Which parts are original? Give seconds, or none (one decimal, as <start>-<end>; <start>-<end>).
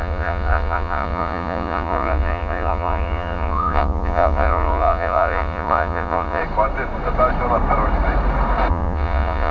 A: 6.4-8.7